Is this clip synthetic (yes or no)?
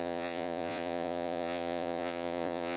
yes